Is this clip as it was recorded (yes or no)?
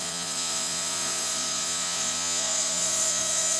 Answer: no